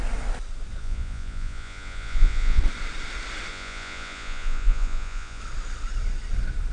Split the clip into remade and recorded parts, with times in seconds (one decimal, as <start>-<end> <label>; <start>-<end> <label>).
0.0-0.8 recorded; 0.8-2.6 remade; 2.6-3.5 recorded; 3.5-5.4 remade; 5.4-6.7 recorded